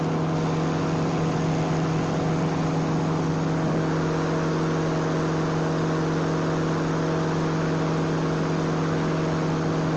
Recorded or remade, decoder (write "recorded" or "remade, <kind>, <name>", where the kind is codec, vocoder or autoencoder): recorded